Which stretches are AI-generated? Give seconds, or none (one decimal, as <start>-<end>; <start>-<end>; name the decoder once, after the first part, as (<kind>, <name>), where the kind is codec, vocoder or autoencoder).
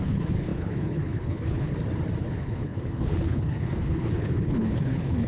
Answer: 0.0-1.7 (codec, HILCodec); 2.2-5.3